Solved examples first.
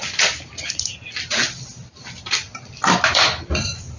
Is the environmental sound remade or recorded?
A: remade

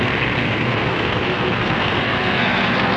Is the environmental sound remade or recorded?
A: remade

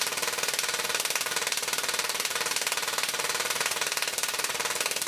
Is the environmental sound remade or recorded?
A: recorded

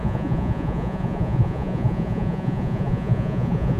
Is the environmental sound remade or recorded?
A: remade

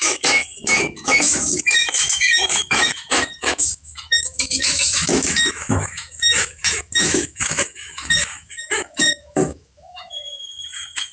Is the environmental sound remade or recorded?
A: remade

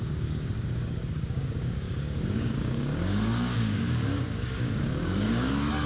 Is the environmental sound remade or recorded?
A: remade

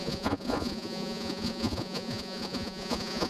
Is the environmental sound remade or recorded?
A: remade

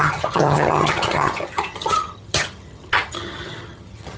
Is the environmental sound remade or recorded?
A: remade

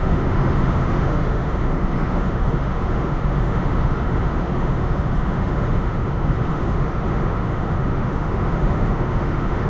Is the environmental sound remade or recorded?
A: remade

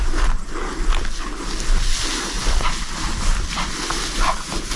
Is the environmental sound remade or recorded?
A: recorded